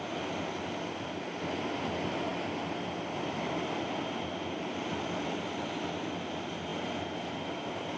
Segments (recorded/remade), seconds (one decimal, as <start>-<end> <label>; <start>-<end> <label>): 0.0-8.0 recorded